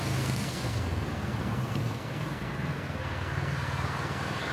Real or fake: fake